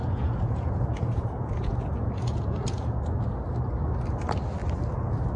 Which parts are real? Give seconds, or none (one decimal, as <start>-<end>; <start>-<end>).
3.0-5.4

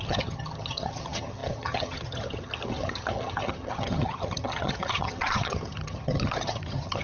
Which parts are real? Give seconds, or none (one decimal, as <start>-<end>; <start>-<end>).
none

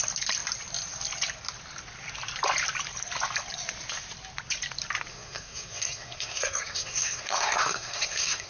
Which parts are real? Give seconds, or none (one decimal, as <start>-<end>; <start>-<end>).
0.0-5.1

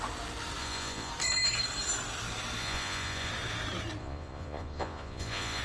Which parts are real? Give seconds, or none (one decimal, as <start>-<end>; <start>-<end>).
0.0-0.6; 1.1-2.6; 3.3-4.0

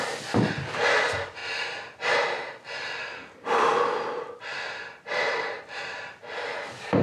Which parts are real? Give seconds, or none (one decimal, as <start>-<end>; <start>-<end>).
0.0-4.5; 6.2-7.0

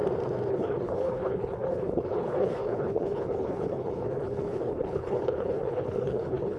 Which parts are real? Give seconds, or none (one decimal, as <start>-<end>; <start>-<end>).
0.0-0.5

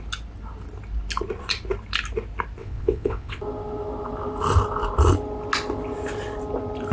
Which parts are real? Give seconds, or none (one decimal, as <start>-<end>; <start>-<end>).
0.0-2.6; 3.4-6.9

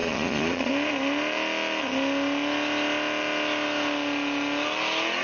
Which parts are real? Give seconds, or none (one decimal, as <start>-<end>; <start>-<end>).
0.7-5.2